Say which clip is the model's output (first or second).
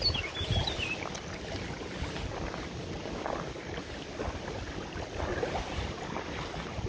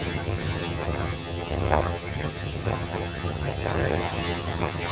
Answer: second